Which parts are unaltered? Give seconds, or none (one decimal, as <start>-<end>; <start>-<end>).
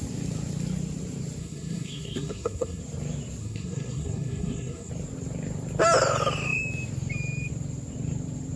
0.0-1.4; 2.8-3.4; 4.9-8.6